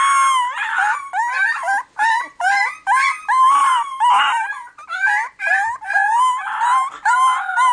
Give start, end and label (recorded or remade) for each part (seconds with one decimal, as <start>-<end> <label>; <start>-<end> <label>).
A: 0.0-7.7 recorded